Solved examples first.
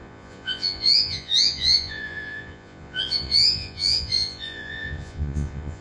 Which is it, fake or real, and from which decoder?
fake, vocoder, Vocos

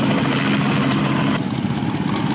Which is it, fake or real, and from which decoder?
real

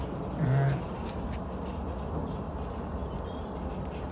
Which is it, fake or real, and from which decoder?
real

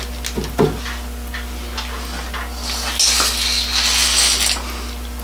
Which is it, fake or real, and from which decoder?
real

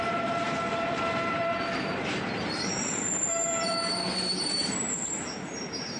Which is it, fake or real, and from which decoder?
fake, vocoder, BigVGAN v2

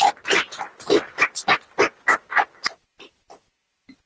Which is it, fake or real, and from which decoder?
real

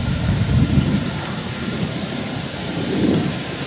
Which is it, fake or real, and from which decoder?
fake, vocoder, BigVGAN v2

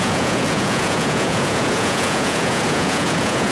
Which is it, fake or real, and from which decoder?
fake, vocoder, Vocos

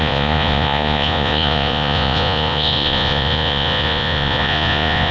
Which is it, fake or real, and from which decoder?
fake, vocoder, Vocos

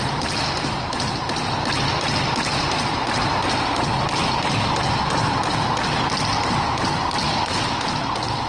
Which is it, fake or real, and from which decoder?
real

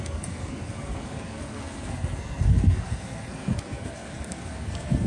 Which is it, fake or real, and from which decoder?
fake, codec, SNAC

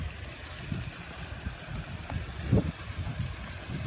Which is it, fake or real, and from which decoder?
real